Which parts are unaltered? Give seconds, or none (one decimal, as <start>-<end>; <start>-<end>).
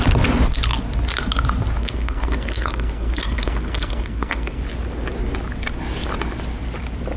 0.0-1.8; 4.6-7.2